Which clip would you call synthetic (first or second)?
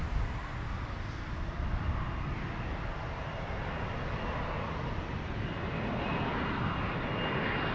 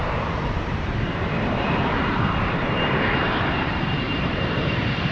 second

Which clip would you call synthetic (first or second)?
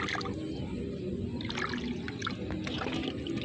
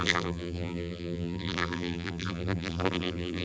second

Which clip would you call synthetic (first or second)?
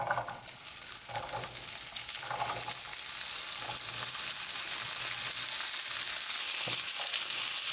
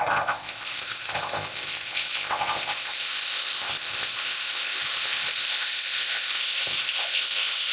second